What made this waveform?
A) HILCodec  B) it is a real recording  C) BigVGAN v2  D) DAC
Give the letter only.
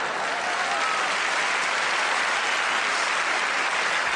B